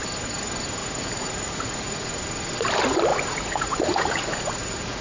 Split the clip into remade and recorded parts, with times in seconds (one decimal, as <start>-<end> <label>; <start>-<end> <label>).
0.0-0.8 recorded; 0.8-2.1 remade; 2.1-3.1 recorded; 3.1-5.0 remade